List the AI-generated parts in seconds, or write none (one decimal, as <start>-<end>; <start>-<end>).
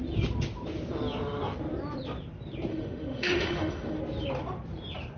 2.7-4.0